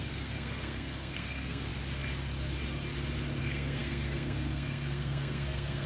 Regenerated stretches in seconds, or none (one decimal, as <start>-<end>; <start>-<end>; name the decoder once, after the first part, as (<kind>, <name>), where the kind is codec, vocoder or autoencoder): 0.0-1.7 (codec, SNAC); 3.4-5.9